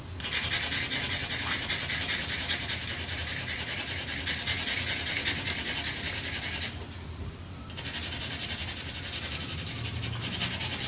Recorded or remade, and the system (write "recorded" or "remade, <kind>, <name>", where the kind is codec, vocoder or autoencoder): recorded